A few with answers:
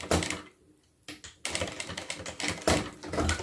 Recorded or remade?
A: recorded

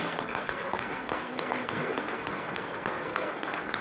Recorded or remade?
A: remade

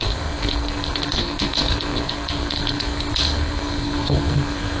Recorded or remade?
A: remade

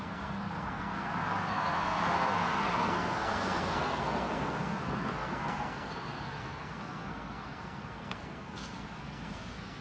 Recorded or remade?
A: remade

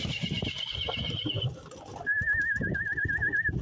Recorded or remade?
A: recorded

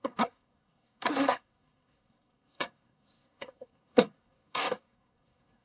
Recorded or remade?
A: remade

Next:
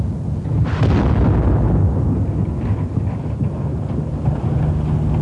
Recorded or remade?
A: recorded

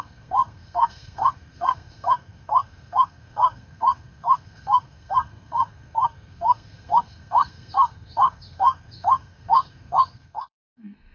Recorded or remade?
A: remade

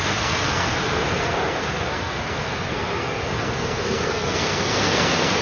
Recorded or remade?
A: remade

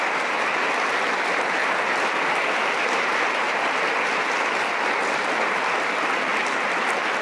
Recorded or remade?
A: recorded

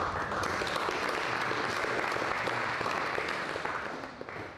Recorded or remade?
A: recorded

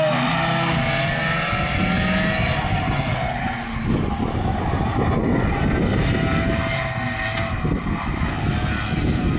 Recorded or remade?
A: recorded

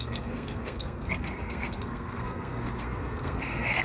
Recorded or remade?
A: remade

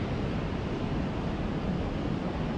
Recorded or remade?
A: recorded